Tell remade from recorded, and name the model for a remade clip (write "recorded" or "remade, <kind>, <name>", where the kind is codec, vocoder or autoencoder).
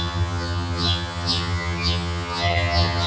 remade, vocoder, HiFi-GAN